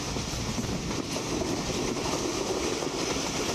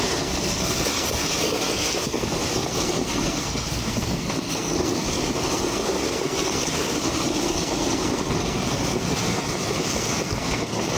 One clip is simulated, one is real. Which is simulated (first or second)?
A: second